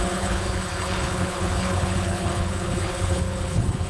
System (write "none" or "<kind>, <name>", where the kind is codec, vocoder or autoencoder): codec, HILCodec